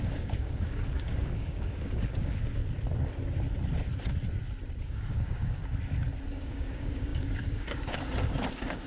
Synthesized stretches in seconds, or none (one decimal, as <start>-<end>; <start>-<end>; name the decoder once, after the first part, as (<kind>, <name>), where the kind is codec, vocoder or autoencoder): 0.0-2.6 (codec, DAC); 4.8-5.6; 6.3-8.9